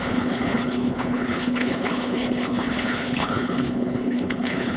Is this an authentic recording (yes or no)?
no